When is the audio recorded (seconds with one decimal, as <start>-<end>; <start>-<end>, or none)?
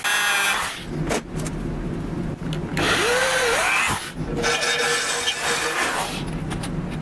0.0-7.0